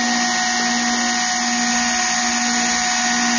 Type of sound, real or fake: real